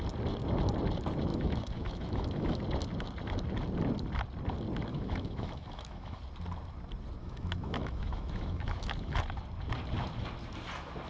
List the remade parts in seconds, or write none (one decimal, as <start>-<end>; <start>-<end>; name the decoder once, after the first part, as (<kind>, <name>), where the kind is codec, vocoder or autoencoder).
1.3-2.6 (autoencoder, DAC-VAE); 4.9-6.2; 7.2-9.2